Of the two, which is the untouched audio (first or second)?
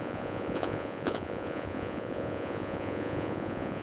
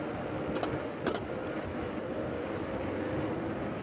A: second